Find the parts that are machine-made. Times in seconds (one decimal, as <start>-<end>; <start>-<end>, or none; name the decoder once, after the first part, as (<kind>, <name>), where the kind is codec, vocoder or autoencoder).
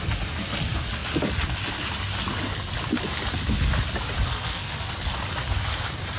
4.3-4.9 (codec, SNAC)